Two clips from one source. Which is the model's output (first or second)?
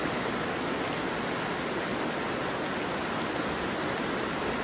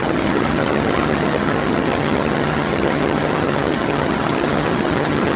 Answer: second